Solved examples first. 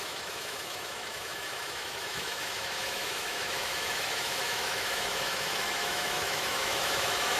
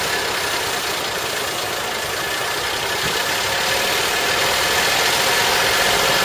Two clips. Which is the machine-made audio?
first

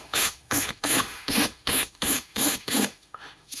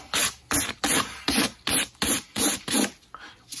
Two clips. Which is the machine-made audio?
first